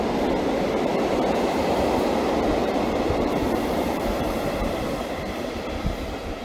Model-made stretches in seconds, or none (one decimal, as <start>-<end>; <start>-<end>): 2.6-5.6